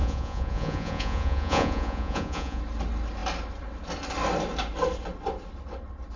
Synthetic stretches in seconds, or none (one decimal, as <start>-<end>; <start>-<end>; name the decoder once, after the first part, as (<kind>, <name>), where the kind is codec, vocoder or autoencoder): 0.0-2.6 (vocoder, Vocos)